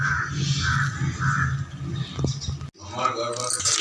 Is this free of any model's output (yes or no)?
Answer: yes